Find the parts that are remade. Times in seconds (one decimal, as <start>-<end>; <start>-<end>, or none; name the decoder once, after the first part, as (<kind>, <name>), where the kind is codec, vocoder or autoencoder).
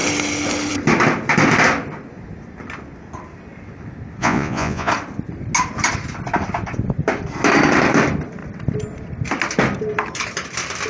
4.2-4.9 (vocoder, Vocos)